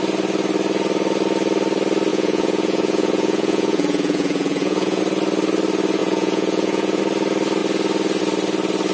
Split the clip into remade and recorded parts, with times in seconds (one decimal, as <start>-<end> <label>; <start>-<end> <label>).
0.0-2.1 recorded; 2.1-5.0 remade; 5.0-6.0 recorded; 6.0-7.0 remade; 7.0-8.9 recorded